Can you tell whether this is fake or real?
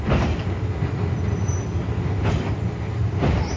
real